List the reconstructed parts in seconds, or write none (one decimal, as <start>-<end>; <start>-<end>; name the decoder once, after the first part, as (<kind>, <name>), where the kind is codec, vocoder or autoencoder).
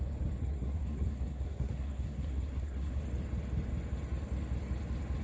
0.4-3.0 (codec, SNAC)